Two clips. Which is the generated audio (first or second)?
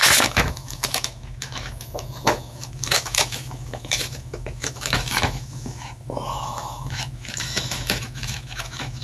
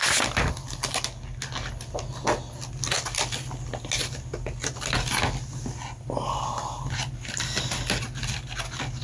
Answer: first